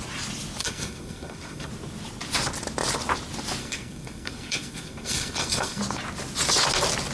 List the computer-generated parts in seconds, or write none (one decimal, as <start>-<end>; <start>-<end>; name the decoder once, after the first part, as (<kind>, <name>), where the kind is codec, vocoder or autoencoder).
0.6-1.7 (codec, SNAC); 3.6-5.8